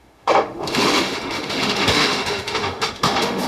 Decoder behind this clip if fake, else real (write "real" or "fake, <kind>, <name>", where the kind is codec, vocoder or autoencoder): fake, autoencoder, DAC-VAE